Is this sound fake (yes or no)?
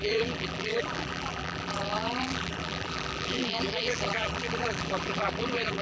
yes